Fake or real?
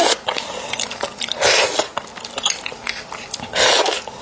real